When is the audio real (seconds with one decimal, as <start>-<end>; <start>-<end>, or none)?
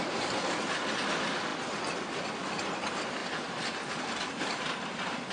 0.0-5.3